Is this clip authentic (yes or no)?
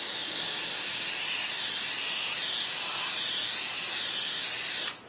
yes